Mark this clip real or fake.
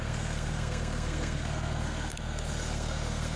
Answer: fake